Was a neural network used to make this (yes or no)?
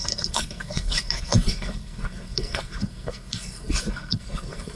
yes